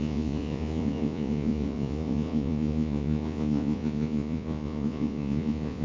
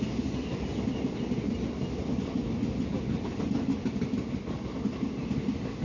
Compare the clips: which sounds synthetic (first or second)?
first